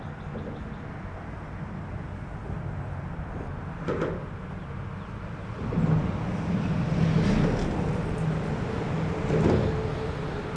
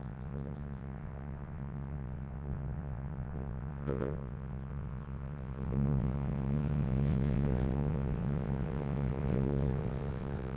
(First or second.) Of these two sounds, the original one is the first